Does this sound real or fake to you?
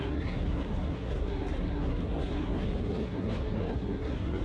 fake